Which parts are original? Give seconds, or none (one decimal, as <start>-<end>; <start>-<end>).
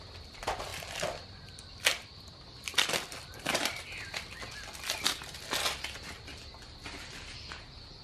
0.0-0.7; 4.5-8.0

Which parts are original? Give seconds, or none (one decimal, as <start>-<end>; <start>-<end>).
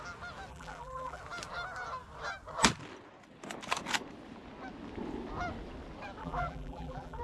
0.0-0.5; 1.2-6.2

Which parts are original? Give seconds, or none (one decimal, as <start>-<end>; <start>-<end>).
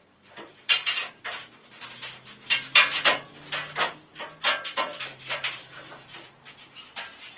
1.6-5.0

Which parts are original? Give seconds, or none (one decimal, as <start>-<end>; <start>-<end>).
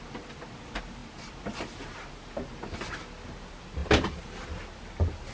0.0-5.3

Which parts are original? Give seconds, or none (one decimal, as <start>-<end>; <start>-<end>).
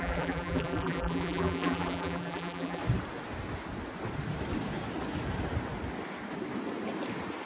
2.8-7.5